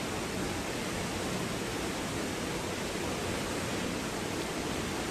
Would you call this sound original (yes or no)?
yes